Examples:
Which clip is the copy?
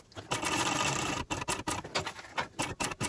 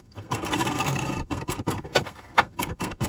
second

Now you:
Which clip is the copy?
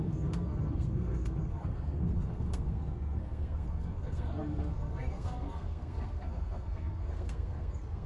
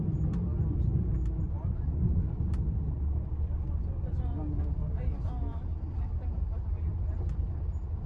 first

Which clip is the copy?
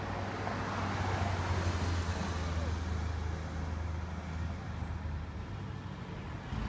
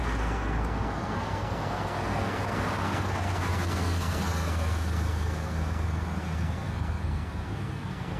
second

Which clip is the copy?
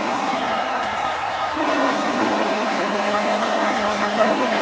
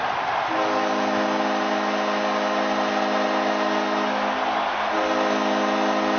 first